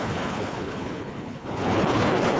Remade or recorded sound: remade